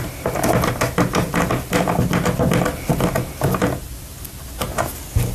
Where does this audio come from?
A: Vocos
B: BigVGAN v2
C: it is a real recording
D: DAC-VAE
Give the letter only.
C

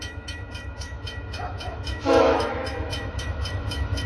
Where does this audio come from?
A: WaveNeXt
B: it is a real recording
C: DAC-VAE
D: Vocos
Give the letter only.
C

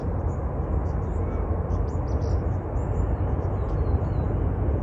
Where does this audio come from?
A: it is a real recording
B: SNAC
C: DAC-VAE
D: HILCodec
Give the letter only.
A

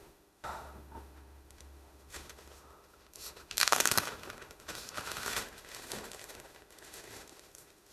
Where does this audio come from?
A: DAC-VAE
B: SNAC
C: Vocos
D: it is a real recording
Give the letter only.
A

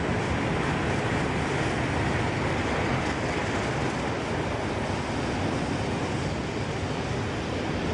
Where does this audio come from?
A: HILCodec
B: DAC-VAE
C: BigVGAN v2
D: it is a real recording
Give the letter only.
D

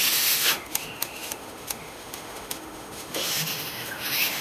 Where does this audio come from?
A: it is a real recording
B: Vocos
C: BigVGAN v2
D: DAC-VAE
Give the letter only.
D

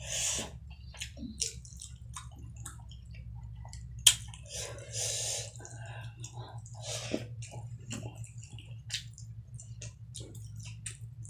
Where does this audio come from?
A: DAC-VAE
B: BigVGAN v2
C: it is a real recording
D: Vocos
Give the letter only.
C